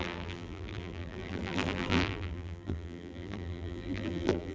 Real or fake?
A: fake